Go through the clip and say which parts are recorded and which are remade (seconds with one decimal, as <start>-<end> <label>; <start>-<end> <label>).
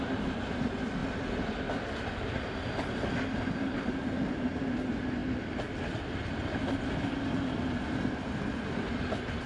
0.0-9.5 recorded